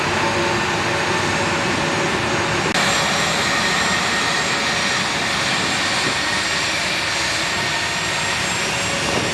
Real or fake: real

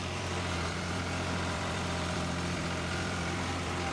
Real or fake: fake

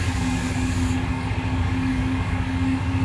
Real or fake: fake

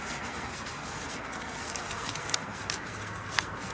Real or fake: fake